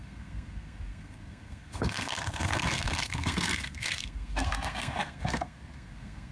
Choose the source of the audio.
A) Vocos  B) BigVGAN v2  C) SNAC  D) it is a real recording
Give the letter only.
C